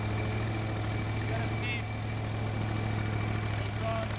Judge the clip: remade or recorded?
recorded